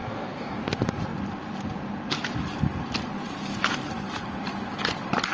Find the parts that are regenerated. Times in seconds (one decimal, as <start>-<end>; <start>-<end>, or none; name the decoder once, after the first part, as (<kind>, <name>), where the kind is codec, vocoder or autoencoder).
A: 0.0-0.6 (codec, DAC)